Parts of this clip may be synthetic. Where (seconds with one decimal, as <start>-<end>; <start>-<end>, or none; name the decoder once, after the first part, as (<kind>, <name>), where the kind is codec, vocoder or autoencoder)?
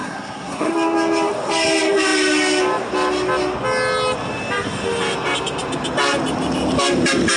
0.0-0.7 (codec, SNAC)